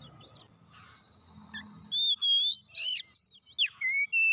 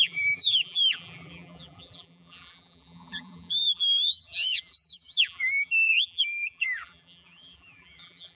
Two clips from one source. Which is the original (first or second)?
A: first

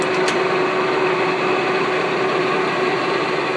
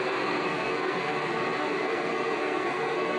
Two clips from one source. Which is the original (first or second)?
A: first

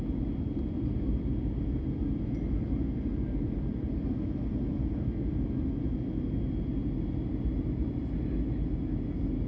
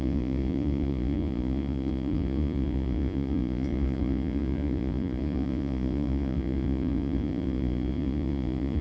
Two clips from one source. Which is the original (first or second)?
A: first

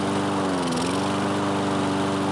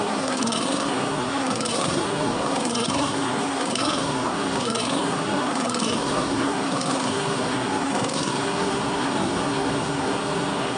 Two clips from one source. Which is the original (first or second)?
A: first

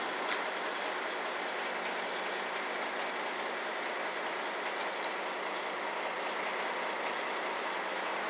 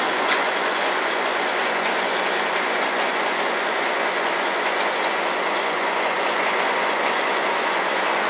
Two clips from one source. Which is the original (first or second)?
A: first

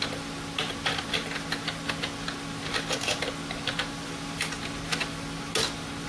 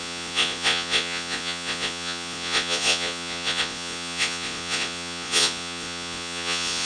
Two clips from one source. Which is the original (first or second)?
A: first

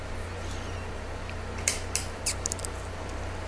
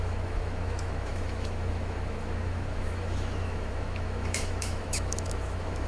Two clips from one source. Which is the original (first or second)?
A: first